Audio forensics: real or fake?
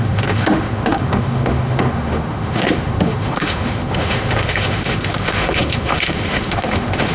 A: fake